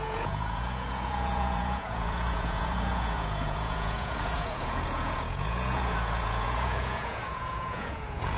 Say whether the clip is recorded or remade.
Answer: remade